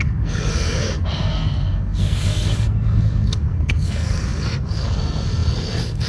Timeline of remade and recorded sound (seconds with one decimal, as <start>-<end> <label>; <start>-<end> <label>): 0.0-6.1 remade